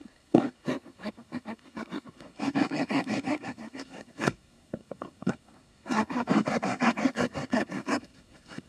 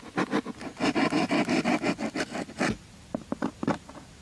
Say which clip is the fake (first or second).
first